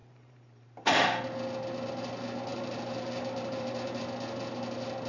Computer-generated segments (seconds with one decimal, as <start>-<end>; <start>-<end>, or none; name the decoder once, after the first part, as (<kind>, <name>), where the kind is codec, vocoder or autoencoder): 0.0-1.2 (vocoder, BigVGAN v2); 2.5-4.0